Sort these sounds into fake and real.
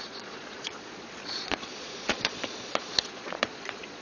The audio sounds fake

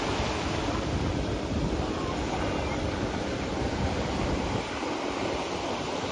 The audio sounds fake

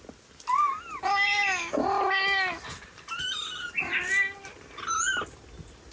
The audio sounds real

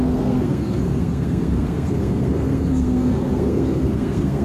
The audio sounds fake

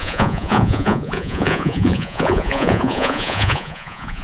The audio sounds fake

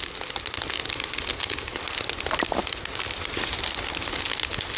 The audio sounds real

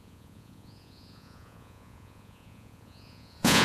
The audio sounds fake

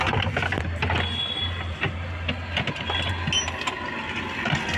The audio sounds real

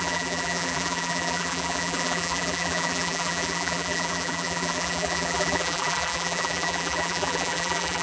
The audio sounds fake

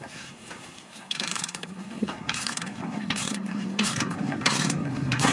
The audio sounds fake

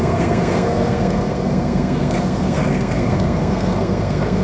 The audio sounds fake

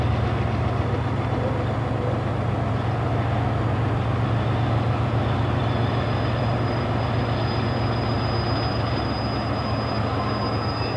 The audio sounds real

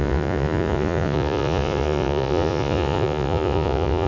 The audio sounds fake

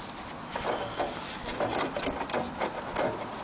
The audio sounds real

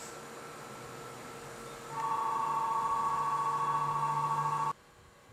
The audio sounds real